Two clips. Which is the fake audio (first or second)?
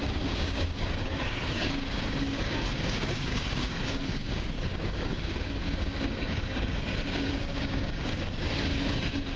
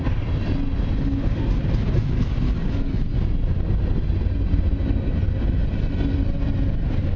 first